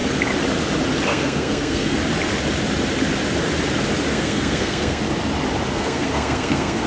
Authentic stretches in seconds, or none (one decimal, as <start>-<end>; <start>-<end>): 0.0-1.1; 2.0-4.1; 5.0-5.7

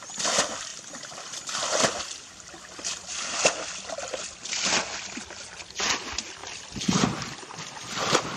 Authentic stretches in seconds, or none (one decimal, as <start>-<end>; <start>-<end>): 0.0-8.4

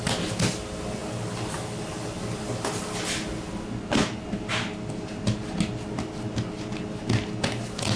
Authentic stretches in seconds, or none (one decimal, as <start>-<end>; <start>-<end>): 0.0-8.0

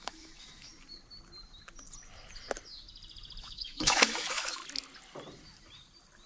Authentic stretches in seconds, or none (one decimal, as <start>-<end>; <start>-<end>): 0.7-3.4; 4.6-6.3

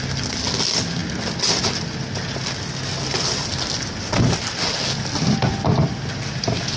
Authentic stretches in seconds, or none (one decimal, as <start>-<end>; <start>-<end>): 0.0-6.8

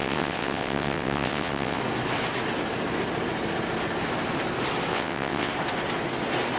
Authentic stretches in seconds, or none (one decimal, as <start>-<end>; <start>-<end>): 1.8-4.9; 5.5-6.6

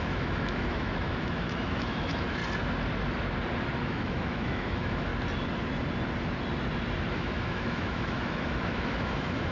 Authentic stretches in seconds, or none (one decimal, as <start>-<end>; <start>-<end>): 2.4-3.8; 5.1-7.1